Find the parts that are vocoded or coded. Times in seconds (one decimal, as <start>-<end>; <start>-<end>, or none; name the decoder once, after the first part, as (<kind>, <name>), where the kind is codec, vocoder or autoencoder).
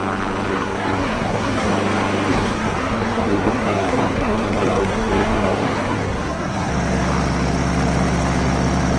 0.5-1.7 (codec, SNAC); 2.3-6.7